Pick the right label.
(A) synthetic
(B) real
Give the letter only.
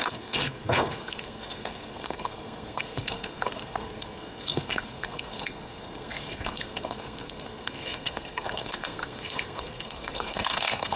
A